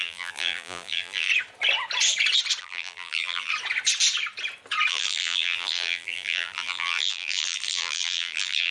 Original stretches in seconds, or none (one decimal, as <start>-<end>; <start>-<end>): 1.3-2.6; 3.5-4.9